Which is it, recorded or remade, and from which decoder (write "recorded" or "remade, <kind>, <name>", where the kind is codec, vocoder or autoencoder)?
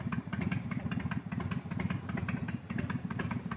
remade, vocoder, BigVGAN v2